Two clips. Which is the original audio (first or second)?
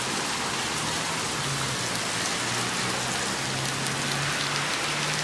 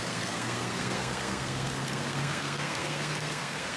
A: first